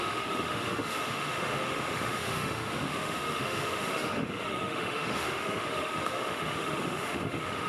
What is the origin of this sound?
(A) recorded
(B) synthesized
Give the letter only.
B